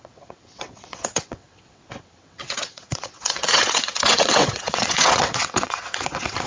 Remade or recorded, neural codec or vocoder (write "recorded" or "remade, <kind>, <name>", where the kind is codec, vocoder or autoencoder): remade, vocoder, WaveNeXt